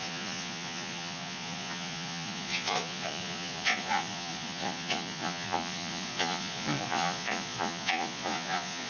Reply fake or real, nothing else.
fake